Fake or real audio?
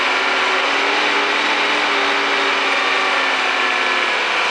real